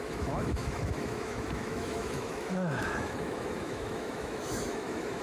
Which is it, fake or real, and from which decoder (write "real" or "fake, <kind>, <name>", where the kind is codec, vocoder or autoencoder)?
fake, autoencoder, DAC-VAE